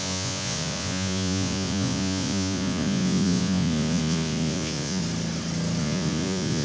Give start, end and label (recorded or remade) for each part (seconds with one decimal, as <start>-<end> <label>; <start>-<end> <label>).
0.0-5.0 remade; 5.0-5.8 recorded; 5.8-6.6 remade